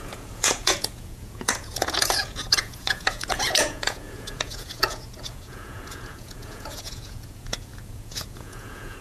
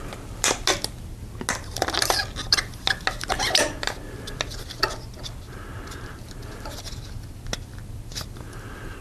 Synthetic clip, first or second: first